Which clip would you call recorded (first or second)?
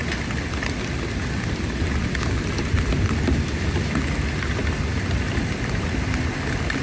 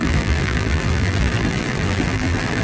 first